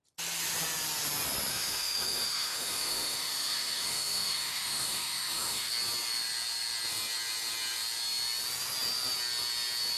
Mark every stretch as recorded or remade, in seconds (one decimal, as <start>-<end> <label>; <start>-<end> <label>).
0.0-1.5 recorded; 1.5-5.7 remade; 5.7-10.0 recorded